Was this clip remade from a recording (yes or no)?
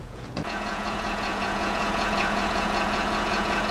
yes